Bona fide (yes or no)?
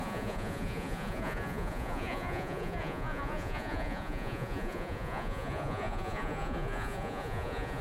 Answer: no